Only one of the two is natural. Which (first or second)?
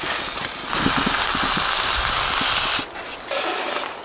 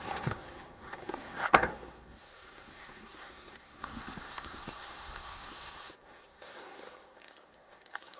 first